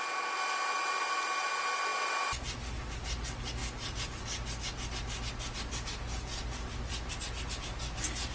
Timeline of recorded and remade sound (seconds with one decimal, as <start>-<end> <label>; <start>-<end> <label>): 0.0-8.3 recorded